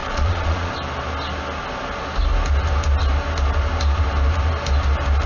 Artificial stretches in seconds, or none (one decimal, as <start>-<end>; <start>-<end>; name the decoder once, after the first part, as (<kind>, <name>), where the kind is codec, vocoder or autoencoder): 0.0-0.7 (vocoder, Vocos)